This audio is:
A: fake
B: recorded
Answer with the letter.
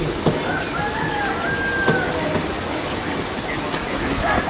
B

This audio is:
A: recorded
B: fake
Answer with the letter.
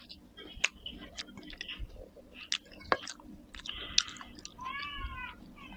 A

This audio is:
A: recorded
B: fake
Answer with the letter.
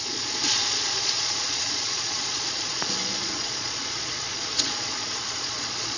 B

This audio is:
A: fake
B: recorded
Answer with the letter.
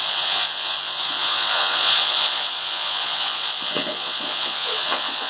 A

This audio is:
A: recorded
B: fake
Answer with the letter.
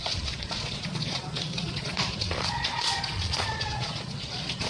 B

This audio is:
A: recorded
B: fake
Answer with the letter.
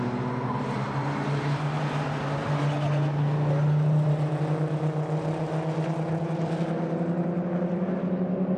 A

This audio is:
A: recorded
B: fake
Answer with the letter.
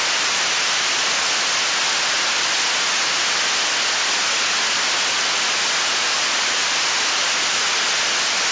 A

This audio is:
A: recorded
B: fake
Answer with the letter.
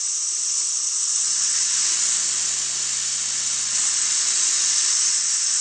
A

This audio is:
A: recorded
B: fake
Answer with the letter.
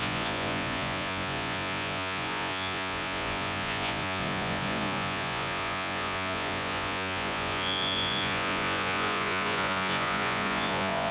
B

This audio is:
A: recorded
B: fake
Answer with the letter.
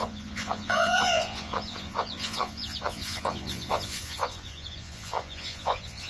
B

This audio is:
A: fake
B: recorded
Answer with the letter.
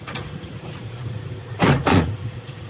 A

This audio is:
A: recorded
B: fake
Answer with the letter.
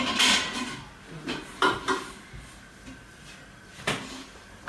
A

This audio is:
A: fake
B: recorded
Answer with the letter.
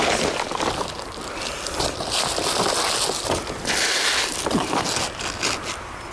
B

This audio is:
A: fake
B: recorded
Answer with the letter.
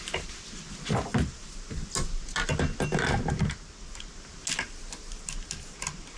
B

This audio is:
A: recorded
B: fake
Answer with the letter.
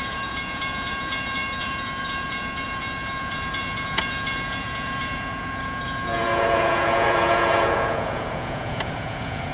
B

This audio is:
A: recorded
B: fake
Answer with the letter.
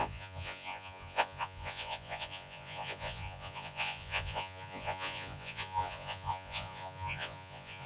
B